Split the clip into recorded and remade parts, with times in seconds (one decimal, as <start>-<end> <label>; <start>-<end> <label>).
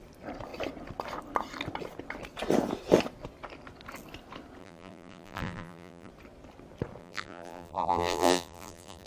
0.0-4.6 recorded; 4.6-6.1 remade; 6.1-7.0 recorded; 7.0-9.1 remade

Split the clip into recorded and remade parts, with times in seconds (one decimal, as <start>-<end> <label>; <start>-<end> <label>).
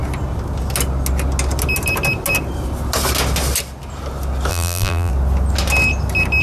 0.0-4.5 recorded; 4.5-5.1 remade; 5.1-6.4 recorded